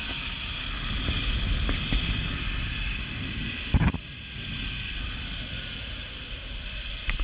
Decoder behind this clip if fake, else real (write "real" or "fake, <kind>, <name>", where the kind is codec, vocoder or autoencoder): real